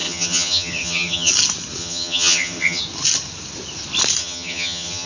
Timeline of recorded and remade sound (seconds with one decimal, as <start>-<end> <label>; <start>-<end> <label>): 0.0-1.3 remade; 1.3-1.8 recorded; 1.8-2.8 remade; 2.8-4.2 recorded; 4.2-5.1 remade